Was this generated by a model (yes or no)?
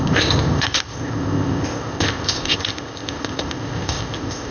yes